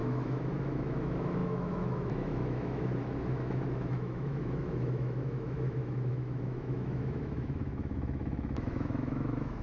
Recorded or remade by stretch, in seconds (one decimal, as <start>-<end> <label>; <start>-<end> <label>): 0.0-9.6 remade